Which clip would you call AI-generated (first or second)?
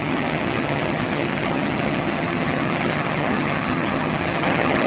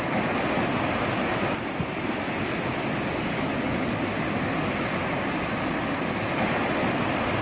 first